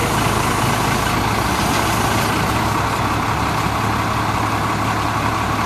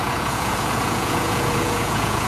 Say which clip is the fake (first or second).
second